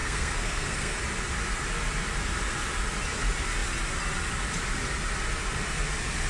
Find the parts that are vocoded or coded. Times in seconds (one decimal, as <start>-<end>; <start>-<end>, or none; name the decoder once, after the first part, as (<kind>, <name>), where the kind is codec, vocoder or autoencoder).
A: 0.0-1.0 (codec, SNAC)